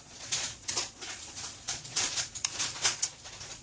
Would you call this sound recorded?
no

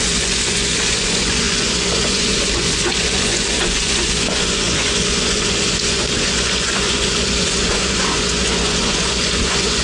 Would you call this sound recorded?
no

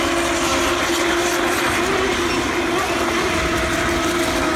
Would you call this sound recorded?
yes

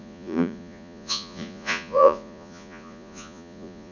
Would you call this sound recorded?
no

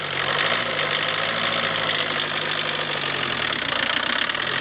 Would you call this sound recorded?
yes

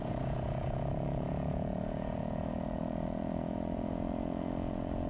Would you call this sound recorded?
no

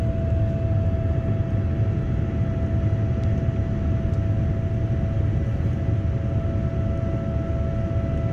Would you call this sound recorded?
yes